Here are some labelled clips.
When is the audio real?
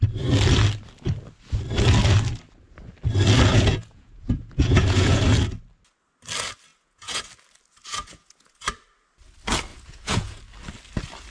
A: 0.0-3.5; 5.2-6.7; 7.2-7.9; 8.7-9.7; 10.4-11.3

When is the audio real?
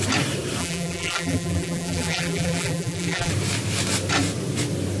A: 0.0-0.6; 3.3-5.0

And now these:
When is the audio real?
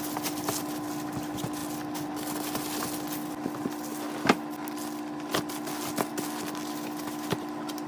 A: 0.0-7.9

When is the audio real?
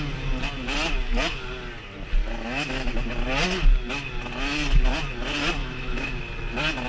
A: 0.0-2.2; 2.9-5.6; 6.2-6.9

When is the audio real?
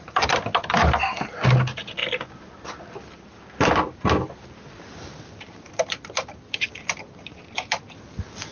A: 0.0-8.5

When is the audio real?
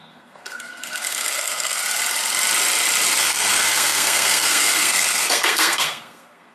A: 1.8-3.2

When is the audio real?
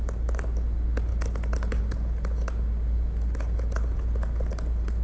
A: 0.0-5.0